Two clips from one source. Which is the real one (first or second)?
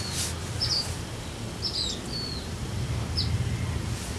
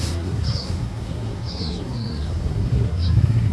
first